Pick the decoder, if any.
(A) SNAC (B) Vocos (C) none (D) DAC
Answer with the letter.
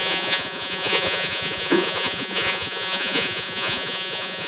B